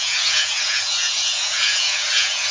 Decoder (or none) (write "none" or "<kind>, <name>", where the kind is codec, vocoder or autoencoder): vocoder, Vocos